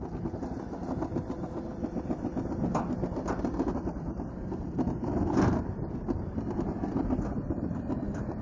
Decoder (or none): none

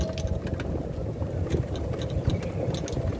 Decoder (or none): none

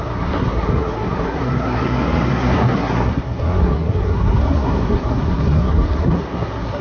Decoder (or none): codec, SNAC